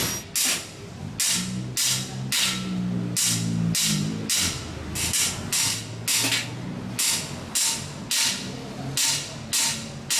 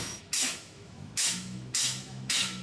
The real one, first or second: first